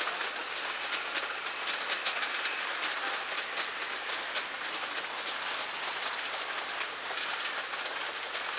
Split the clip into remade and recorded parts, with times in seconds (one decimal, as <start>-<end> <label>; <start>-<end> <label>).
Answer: 0.0-8.6 recorded